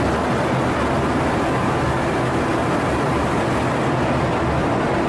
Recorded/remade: recorded